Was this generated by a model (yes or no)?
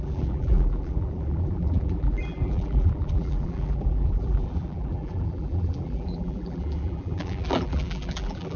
yes